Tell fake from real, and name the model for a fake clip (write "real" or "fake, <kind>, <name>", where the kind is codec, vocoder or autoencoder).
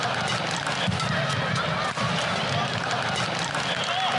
real